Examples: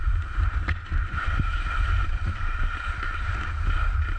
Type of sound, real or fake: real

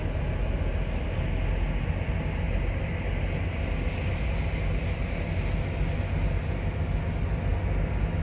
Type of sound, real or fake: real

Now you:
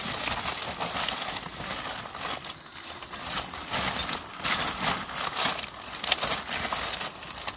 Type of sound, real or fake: real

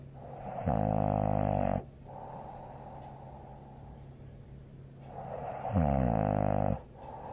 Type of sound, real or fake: real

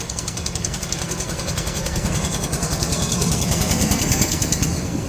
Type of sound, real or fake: fake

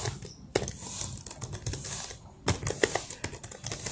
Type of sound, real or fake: real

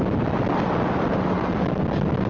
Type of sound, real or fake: real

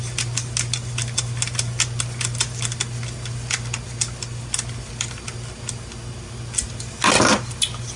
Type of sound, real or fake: real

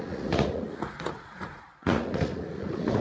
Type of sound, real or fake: fake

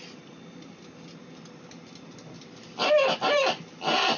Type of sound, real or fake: real